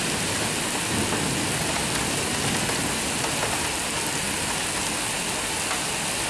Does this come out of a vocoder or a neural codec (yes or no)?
no